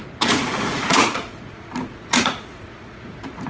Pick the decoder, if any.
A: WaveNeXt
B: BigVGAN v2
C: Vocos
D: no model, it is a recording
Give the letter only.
C